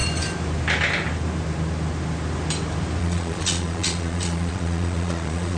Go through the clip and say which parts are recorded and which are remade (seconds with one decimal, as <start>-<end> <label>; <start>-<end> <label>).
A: 0.0-3.0 recorded; 3.0-5.6 remade